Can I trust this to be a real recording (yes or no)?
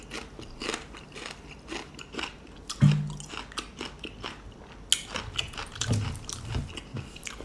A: yes